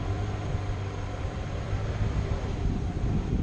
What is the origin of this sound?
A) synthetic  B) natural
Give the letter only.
A